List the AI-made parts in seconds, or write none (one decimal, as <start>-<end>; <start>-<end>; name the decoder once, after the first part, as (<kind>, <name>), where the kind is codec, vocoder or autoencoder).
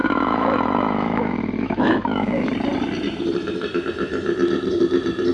0.0-2.5 (autoencoder, DAC-VAE)